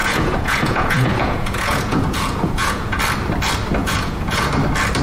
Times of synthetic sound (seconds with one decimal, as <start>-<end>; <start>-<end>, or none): 0.0-3.0; 3.8-4.5